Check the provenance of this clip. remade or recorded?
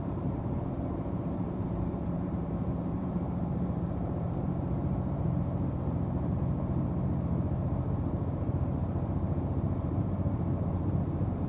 remade